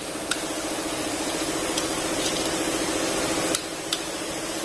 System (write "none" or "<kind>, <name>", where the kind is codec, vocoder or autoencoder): none